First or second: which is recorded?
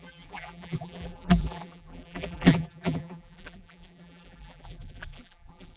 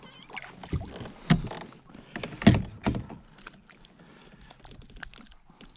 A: second